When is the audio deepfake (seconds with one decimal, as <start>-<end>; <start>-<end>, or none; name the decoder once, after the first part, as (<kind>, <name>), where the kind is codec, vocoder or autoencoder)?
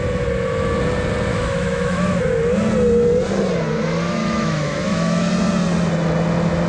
1.3-2.2 (autoencoder, DAC-VAE); 4.2-5.3